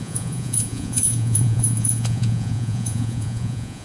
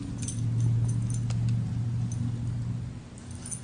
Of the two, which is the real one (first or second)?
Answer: second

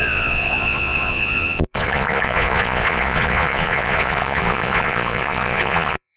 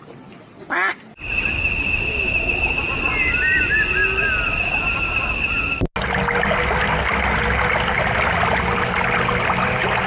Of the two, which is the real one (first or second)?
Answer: second